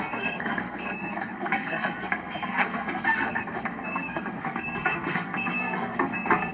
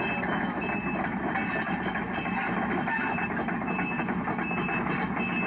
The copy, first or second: first